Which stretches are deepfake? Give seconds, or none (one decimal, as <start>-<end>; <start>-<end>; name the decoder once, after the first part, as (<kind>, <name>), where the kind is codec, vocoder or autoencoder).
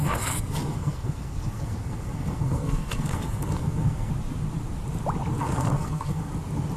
0.0-4.1 (codec, SNAC); 5.4-6.3